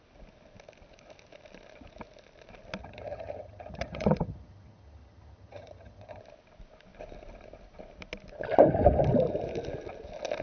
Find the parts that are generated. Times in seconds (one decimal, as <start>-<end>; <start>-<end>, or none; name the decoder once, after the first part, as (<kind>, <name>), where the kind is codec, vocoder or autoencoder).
2.8-6.2 (vocoder, HiFi-GAN)

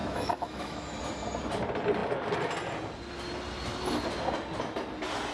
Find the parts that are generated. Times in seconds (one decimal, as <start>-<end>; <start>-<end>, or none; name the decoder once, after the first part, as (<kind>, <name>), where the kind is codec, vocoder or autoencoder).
0.0-1.0 (autoencoder, DAC-VAE)

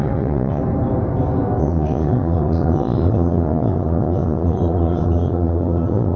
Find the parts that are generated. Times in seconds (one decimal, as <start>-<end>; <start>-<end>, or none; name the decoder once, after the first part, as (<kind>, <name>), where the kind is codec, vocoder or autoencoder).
0.0-0.6 (vocoder, Vocos); 1.6-6.2

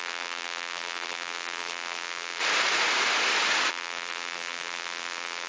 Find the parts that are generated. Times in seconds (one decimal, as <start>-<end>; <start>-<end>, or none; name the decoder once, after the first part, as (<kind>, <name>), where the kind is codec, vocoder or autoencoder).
0.0-2.4 (vocoder, BigVGAN v2); 3.7-5.5